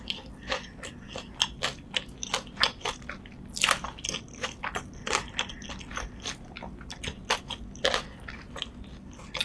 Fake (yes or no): no